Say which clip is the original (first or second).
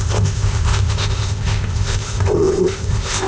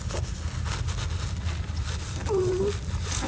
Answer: second